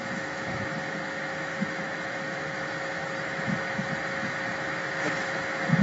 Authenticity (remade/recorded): remade